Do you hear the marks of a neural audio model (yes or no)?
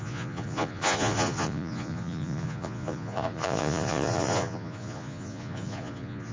yes